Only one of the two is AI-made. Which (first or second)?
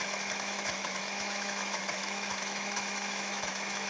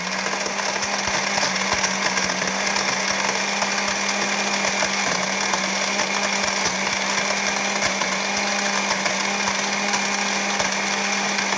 first